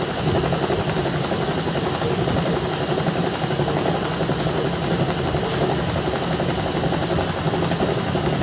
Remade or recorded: recorded